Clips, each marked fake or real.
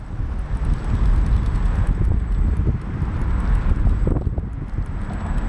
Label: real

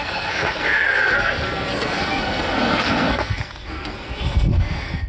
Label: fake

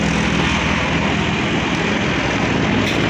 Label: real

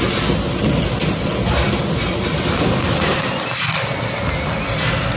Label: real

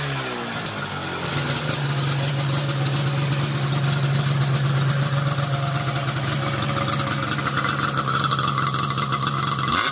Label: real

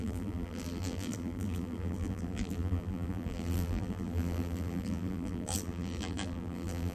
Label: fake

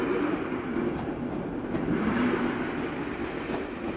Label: real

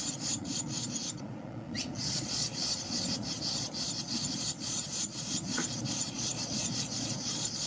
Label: fake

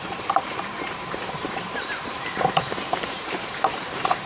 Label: fake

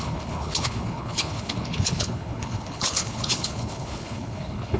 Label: fake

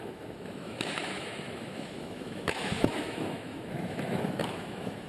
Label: fake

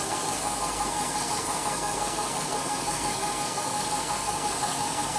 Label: fake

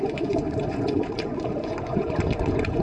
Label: fake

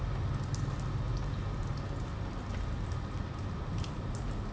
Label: real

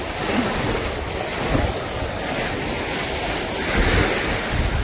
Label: real